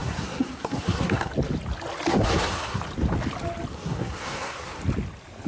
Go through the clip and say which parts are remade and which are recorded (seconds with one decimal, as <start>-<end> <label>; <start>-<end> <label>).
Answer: 0.0-1.3 remade; 1.3-2.1 recorded; 2.1-2.8 remade; 2.8-3.7 recorded; 3.7-4.8 remade; 4.8-5.5 recorded